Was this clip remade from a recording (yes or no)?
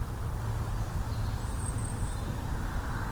no